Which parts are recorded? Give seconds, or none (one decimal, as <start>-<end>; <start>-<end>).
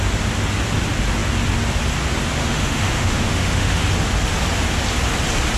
0.0-2.4; 3.9-5.6